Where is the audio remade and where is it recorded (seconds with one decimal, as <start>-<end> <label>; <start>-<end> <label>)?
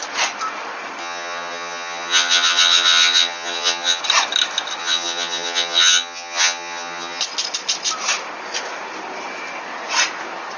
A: 0.0-1.0 recorded; 1.0-4.0 remade; 4.0-4.8 recorded; 4.8-7.2 remade; 7.2-10.6 recorded